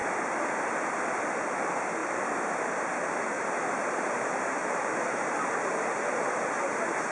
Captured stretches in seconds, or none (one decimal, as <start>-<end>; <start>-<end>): 0.0-2.0; 5.7-7.1